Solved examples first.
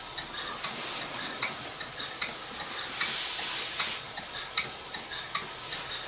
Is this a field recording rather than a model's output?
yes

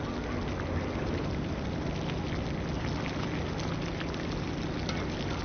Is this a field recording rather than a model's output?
yes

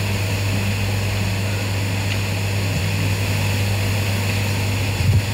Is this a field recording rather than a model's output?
yes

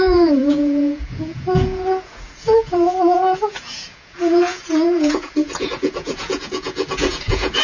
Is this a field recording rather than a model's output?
no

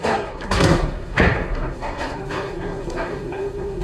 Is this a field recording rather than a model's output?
no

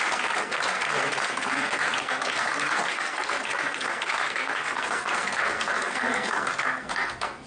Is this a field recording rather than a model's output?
no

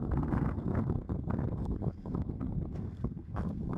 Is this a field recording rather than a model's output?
no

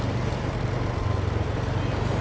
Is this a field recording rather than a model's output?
yes